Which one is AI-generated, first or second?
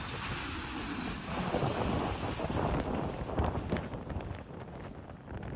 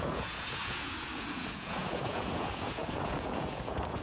second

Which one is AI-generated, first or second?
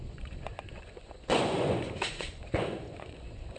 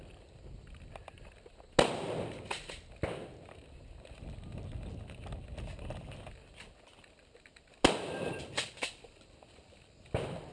first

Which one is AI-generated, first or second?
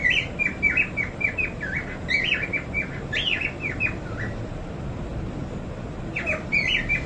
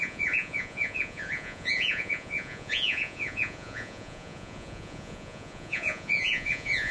second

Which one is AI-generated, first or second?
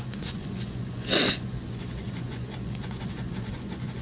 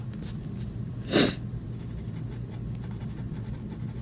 first